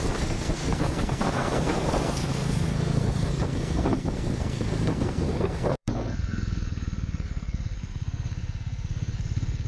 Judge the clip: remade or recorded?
remade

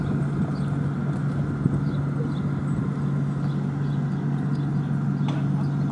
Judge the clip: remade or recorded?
recorded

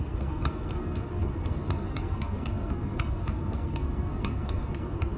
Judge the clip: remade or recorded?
remade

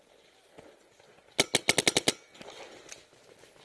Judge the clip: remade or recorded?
recorded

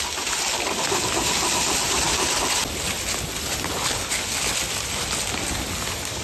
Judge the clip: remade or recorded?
recorded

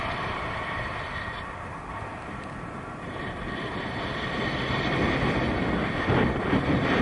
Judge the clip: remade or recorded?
recorded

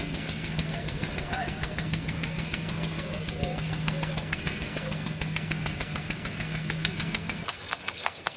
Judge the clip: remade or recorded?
remade